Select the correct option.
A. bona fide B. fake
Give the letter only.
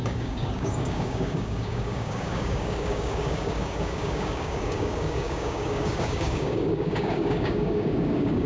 B